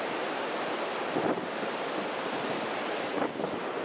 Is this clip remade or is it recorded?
recorded